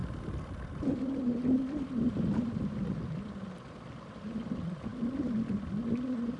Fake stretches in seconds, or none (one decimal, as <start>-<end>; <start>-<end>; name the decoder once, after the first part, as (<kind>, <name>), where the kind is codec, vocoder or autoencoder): none